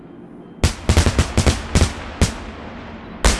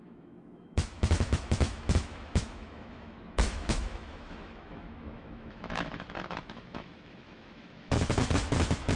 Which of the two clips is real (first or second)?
first